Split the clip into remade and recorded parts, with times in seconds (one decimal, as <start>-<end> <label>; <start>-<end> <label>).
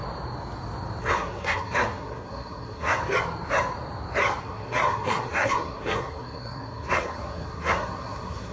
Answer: 0.0-1.0 recorded; 1.0-3.0 remade; 3.0-4.4 recorded; 4.4-8.5 remade